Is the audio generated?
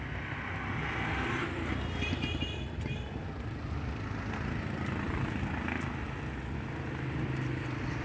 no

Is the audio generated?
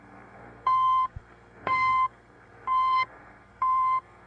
yes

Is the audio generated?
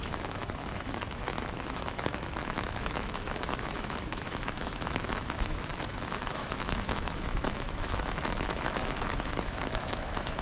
yes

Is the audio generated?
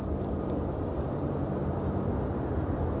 no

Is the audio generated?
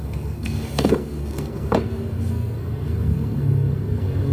yes